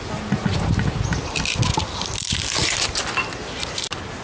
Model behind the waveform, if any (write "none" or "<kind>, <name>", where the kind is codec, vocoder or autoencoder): none